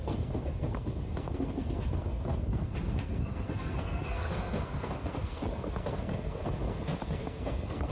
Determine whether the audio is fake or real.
fake